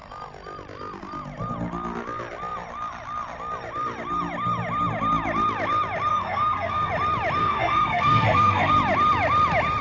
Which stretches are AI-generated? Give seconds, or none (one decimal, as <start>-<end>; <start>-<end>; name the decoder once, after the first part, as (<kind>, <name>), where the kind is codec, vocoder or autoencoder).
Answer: 6.1-6.9 (codec, SNAC); 7.4-8.7